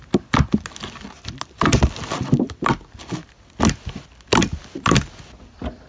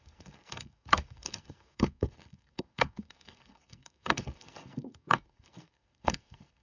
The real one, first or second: first